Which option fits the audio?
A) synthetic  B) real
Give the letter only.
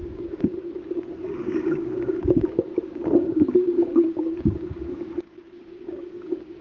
A